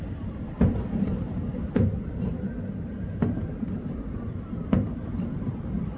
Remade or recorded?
remade